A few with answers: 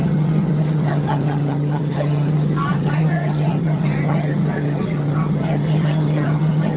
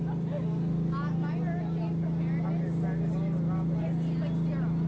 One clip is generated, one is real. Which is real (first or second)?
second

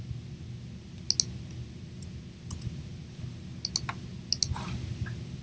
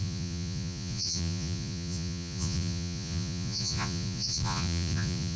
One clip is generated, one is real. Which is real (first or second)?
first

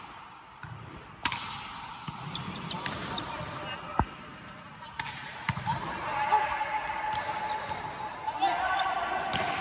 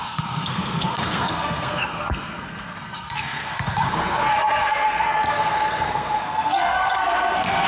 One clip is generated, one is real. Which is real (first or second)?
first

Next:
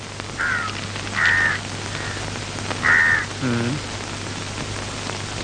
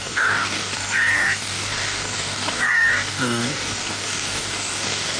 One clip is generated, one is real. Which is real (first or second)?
first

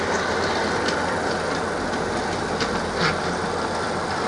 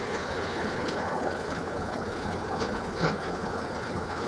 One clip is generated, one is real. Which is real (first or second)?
first